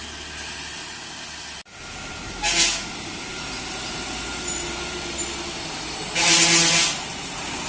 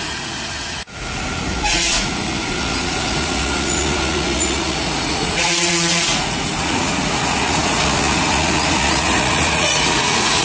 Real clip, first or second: first